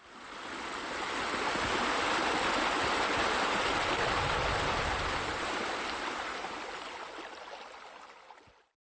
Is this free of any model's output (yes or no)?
yes